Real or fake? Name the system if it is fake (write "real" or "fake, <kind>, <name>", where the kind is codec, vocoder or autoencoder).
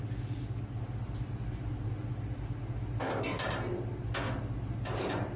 real